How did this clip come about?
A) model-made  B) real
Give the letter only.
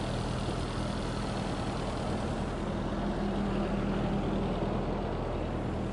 B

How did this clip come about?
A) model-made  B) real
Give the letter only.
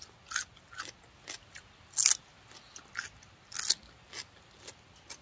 B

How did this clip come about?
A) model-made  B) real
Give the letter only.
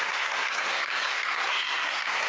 A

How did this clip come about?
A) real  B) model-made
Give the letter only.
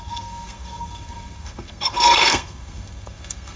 B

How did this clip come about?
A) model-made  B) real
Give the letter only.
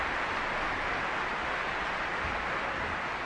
B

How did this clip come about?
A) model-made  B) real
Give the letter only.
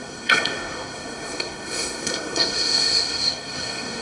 A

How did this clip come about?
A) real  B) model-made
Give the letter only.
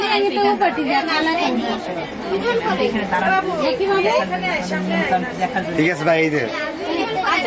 A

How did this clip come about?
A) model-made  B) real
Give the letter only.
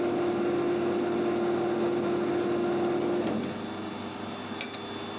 B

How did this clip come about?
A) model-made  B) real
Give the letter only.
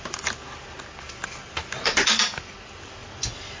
B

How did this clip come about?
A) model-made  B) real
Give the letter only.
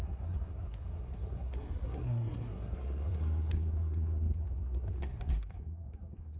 A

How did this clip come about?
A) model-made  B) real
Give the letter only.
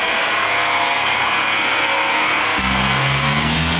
A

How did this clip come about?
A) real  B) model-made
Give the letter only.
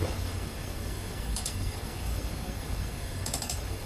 B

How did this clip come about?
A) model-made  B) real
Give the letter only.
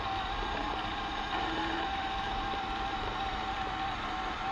B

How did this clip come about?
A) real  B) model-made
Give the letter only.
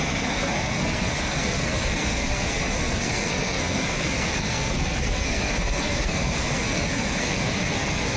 B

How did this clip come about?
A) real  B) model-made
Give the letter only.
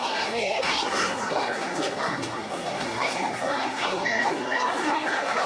B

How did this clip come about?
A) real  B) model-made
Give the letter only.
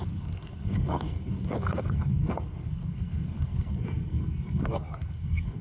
B